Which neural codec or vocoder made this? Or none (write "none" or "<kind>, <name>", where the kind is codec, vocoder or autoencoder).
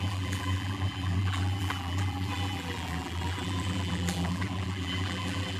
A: vocoder, BigVGAN v2